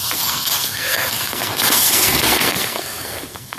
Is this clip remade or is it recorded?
remade